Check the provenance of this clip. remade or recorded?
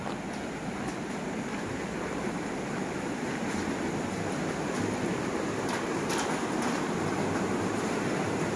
recorded